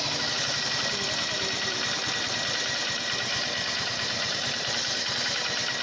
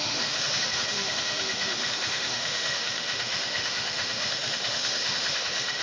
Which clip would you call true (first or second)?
first